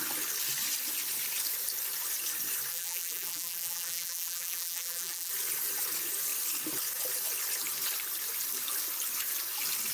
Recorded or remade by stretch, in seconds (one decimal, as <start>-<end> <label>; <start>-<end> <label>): 0.0-2.7 recorded; 2.7-5.3 remade; 5.3-9.9 recorded

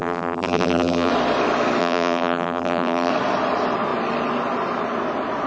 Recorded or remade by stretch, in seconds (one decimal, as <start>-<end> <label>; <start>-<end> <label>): 0.0-1.1 remade; 1.1-1.8 recorded; 1.8-3.1 remade; 3.1-5.5 recorded

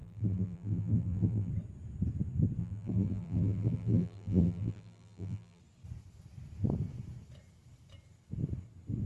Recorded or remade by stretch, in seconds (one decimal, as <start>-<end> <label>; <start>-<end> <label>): 0.0-1.5 remade; 1.5-2.6 recorded; 2.6-5.6 remade; 5.6-9.1 recorded

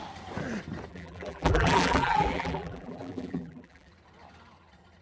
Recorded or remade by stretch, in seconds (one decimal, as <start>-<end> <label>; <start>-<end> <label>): 0.0-0.9 recorded; 0.9-3.9 remade; 3.9-5.0 recorded